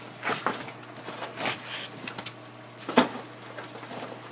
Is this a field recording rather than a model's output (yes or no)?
yes